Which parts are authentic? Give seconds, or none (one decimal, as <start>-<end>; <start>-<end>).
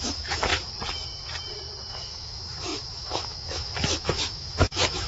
0.5-1.9